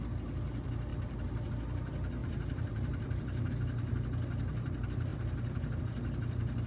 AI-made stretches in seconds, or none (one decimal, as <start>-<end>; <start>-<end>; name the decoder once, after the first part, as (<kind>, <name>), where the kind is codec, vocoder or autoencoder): 2.2-3.5 (vocoder, BigVGAN v2)